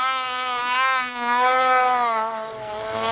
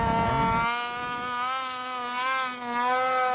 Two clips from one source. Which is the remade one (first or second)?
first